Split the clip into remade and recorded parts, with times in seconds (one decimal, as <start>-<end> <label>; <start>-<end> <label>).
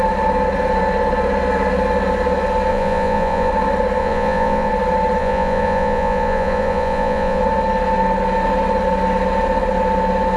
0.0-2.7 recorded; 2.7-3.5 remade; 3.5-4.0 recorded; 4.0-4.7 remade; 4.7-5.2 recorded; 5.2-7.4 remade; 7.4-10.4 recorded